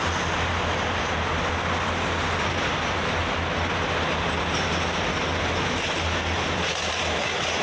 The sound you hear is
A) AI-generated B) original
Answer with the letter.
B